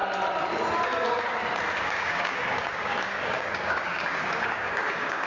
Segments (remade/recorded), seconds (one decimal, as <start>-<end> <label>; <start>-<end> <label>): 0.0-1.8 recorded; 1.8-5.3 remade